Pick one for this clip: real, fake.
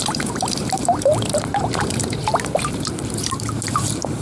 fake